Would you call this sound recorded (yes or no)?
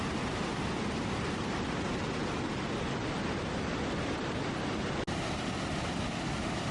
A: yes